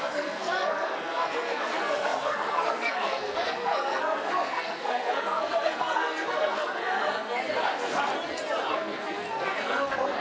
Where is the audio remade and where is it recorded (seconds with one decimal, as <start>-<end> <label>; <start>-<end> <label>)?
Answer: 0.0-8.1 remade; 8.1-8.7 recorded; 8.7-10.2 remade